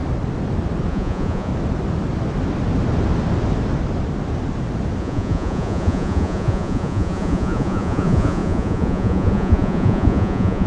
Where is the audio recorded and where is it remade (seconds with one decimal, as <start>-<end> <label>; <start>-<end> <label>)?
0.0-0.9 recorded; 0.9-1.5 remade; 1.5-5.0 recorded; 5.0-10.7 remade